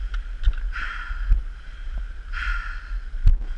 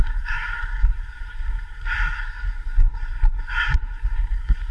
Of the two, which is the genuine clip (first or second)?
first